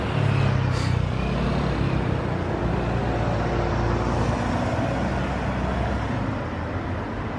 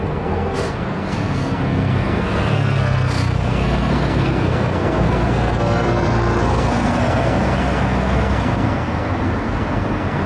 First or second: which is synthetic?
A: second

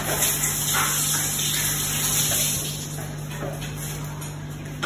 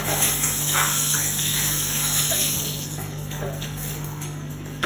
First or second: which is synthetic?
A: second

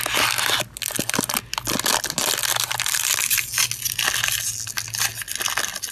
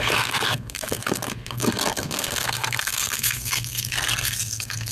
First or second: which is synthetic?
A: second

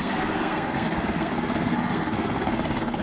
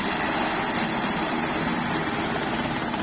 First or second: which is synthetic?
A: first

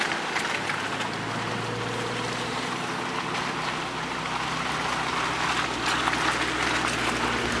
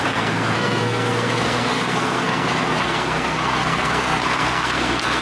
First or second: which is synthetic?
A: second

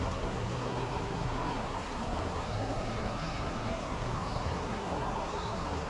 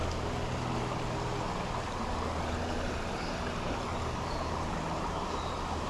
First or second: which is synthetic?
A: first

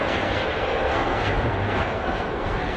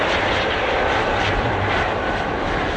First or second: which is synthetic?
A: first